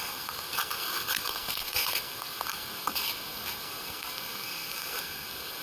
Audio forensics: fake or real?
fake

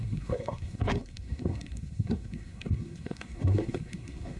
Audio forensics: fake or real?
fake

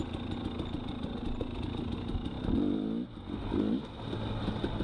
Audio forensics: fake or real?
real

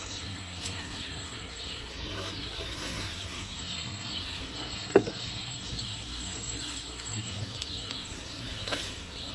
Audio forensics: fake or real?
fake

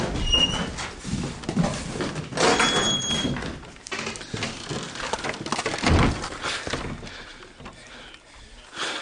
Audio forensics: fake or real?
real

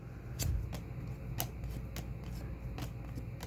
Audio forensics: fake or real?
real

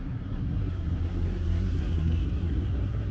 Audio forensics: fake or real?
fake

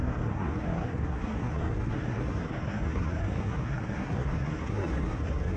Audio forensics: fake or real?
fake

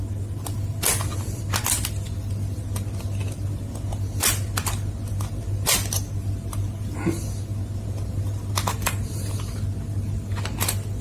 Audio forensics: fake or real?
real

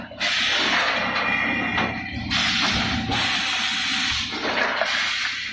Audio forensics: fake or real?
real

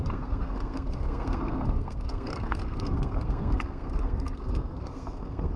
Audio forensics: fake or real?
fake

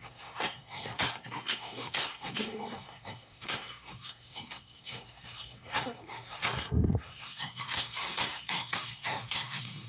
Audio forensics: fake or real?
fake